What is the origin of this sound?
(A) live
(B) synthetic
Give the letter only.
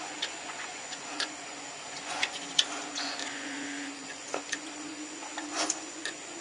B